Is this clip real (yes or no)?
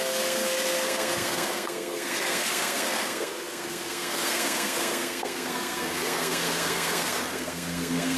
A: no